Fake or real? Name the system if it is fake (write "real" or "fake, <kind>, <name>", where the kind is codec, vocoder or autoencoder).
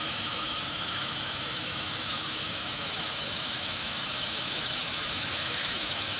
fake, autoencoder, DAC-VAE